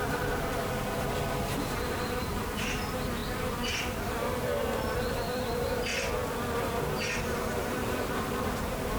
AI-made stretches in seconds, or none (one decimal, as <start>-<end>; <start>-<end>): 0.0-3.2; 5.1-5.9; 7.2-9.0